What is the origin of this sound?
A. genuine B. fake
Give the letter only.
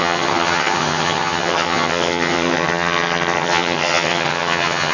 B